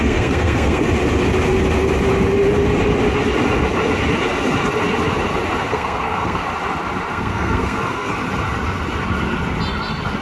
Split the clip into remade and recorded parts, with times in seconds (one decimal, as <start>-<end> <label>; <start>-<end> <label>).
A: 0.0-0.8 remade; 0.8-5.7 recorded; 5.7-6.4 remade; 6.4-7.1 recorded; 7.1-8.1 remade; 8.1-10.2 recorded